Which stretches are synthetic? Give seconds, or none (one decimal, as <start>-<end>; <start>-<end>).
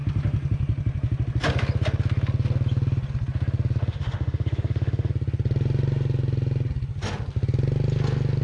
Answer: 3.8-5.1